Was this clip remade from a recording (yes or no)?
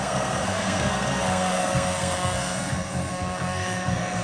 yes